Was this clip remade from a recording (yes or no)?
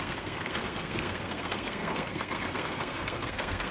yes